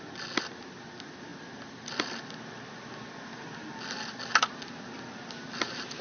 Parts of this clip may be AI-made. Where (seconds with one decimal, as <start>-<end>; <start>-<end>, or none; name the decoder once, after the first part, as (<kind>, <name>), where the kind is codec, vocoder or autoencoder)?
none